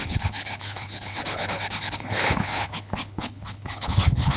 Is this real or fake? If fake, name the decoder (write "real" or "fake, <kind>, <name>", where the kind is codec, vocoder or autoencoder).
fake, codec, HILCodec